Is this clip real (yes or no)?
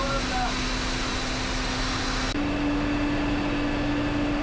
yes